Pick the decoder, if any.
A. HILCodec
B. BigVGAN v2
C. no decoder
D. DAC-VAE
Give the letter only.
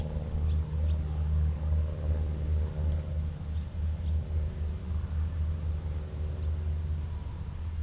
C